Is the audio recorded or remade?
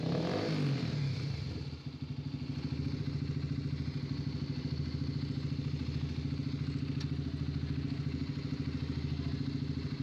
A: recorded